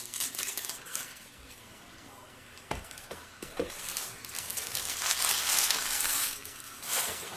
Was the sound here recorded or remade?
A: remade